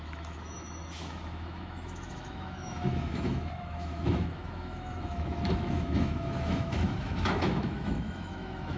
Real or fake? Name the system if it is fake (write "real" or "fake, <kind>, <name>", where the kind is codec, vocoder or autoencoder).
fake, autoencoder, DAC-VAE